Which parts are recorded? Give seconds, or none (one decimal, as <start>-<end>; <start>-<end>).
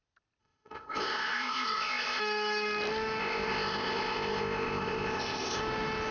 0.0-0.4; 2.2-3.2; 5.6-6.1